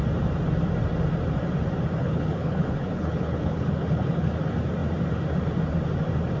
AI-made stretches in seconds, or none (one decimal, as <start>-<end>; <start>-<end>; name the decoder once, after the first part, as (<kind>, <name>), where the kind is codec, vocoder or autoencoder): 2.0-4.3 (codec, HILCodec)